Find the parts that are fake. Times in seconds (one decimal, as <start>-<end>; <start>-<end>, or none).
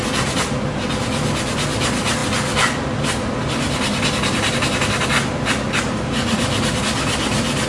none